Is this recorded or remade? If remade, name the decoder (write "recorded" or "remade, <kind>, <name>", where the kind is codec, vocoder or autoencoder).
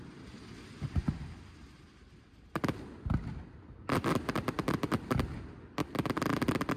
recorded